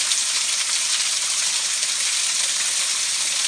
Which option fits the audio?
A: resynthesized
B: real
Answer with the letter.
B